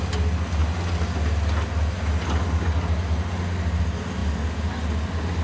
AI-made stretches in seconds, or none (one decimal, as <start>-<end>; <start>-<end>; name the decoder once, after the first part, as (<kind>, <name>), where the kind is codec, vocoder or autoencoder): none